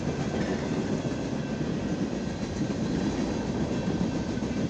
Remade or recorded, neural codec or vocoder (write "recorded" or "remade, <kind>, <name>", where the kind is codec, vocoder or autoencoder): recorded